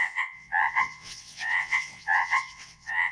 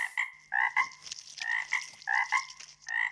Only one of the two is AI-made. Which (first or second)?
first